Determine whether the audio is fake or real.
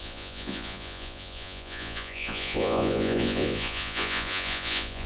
fake